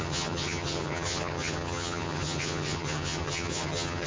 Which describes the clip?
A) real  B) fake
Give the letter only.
B